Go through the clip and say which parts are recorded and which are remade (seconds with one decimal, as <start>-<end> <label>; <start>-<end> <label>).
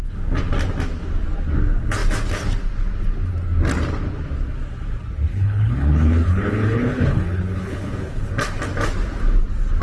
0.0-5.3 recorded; 5.3-8.3 remade; 8.3-9.8 recorded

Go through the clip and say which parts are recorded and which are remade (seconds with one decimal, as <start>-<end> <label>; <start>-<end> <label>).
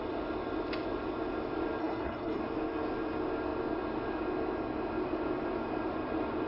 0.0-1.8 recorded; 1.8-2.4 remade; 2.4-6.5 recorded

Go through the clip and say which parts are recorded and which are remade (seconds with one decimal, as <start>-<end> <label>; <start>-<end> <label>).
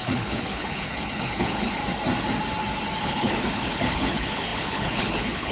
0.0-1.8 remade; 1.8-3.0 recorded; 3.0-5.5 remade